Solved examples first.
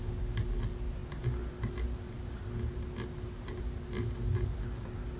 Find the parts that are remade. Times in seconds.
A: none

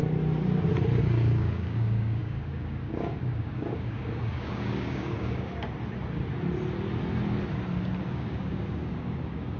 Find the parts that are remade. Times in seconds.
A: 1.0-5.5 (codec, DAC); 8.0-9.6

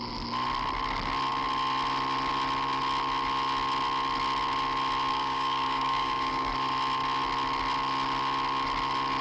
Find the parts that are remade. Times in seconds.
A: 5.1-6.5 (codec, DAC)

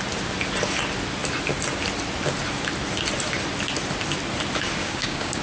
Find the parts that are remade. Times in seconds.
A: 4.8-5.4 (codec, DAC)

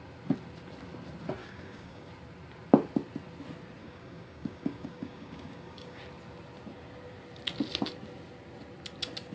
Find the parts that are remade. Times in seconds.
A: 1.4-2.1 (codec, DAC); 3.8-6.0

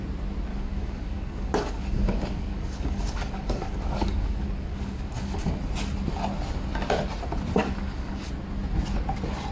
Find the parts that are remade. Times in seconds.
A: 0.5-5.6 (codec, DAC); 7.6-8.3

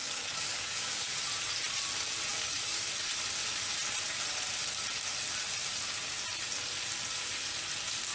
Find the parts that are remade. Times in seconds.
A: 0.0-1.2 (codec, DAC); 2.3-3.1

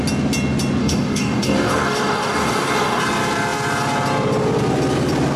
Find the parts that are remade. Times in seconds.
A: 0.8-3.0 (codec, DAC)